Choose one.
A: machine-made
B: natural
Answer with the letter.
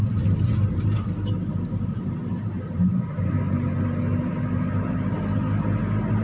B